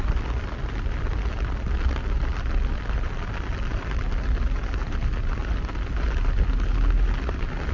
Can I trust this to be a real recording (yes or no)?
yes